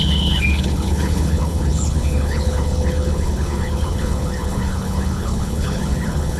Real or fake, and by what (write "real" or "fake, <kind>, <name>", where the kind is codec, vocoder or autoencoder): fake, codec, HILCodec